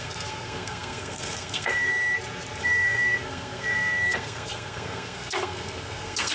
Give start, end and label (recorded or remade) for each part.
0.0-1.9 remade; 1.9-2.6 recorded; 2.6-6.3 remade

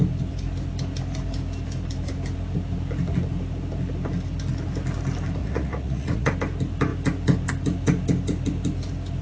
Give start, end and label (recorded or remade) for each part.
0.0-5.4 recorded; 5.4-6.3 remade; 6.3-9.2 recorded